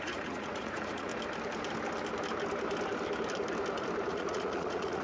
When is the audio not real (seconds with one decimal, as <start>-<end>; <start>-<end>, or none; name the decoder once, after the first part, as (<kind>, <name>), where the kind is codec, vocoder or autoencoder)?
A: 0.0-1.1 (vocoder, Vocos); 4.1-5.0